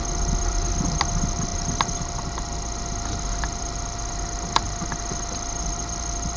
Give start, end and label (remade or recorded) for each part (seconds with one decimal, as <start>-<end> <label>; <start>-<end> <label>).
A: 0.0-6.4 recorded